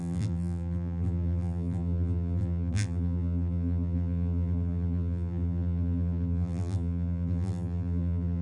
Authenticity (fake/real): fake